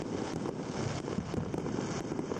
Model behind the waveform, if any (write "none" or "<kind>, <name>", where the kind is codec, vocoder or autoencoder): none